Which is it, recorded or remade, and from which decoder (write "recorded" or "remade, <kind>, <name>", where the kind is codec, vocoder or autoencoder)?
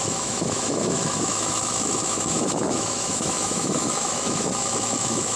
remade, autoencoder, DAC-VAE